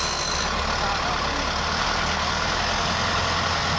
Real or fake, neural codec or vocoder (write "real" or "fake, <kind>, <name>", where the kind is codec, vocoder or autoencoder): real